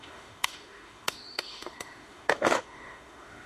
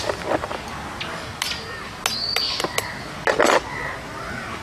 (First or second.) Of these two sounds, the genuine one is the second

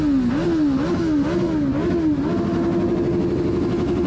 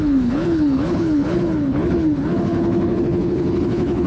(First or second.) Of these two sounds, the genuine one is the first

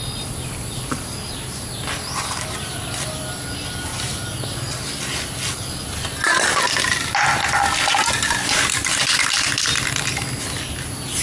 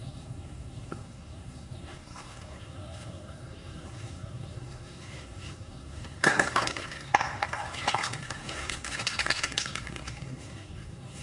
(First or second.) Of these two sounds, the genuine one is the first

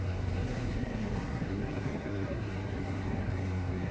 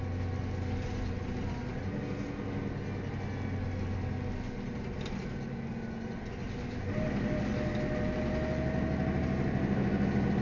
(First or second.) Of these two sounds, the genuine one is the second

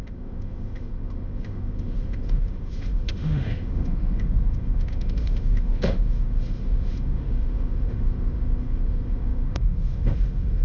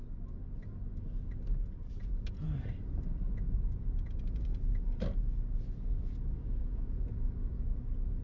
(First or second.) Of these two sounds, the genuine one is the second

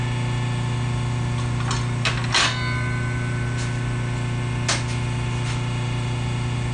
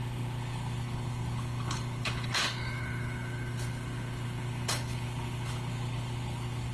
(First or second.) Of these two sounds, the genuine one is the first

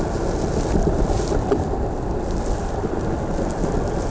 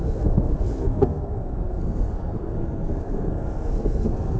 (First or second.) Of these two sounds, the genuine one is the first